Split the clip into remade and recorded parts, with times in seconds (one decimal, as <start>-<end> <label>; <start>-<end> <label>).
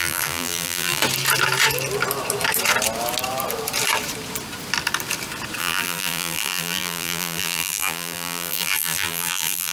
0.0-1.0 remade; 1.0-5.6 recorded; 5.6-9.7 remade